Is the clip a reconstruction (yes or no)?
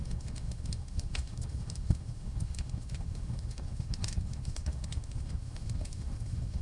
yes